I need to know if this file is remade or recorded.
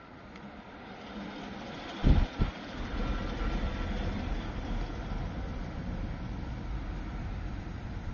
recorded